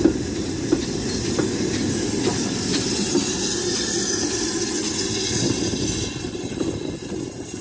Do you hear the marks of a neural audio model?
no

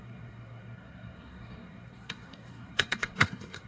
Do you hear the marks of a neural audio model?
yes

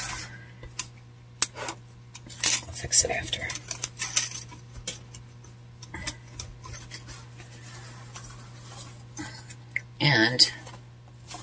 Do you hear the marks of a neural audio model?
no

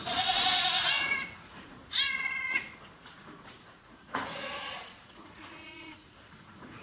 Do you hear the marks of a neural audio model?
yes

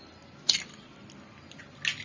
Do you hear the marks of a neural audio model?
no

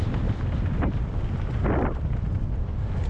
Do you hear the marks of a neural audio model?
no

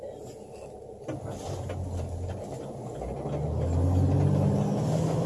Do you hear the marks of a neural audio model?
no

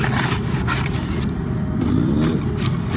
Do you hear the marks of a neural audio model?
no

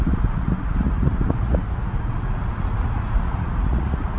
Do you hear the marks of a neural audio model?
yes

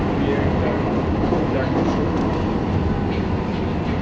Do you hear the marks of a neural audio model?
no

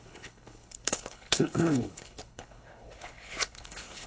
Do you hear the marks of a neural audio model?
yes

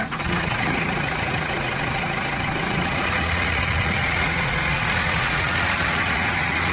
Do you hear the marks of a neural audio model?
yes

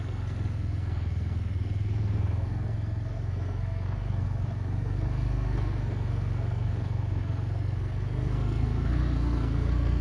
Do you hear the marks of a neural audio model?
yes